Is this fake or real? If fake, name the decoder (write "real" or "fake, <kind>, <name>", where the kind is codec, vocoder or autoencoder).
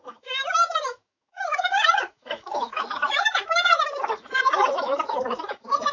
fake, autoencoder, DAC-VAE